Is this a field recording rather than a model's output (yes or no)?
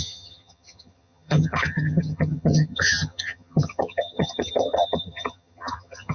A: no